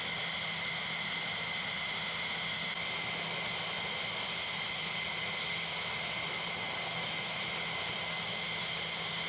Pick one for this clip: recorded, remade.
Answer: recorded